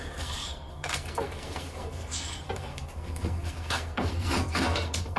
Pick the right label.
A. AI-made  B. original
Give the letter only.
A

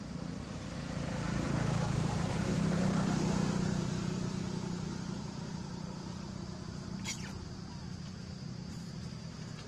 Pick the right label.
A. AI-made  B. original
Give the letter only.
A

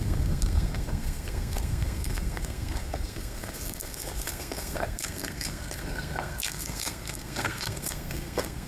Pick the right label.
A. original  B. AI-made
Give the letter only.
B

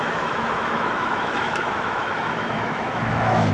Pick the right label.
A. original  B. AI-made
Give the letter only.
B